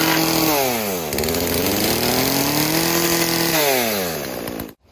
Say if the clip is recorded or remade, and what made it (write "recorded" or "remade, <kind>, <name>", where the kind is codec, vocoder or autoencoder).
recorded